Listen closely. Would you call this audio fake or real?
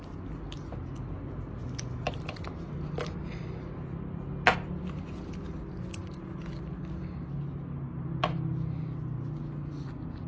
real